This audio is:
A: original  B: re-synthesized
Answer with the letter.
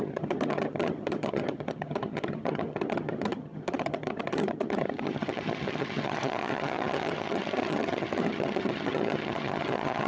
B